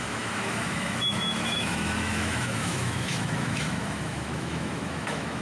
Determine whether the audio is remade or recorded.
remade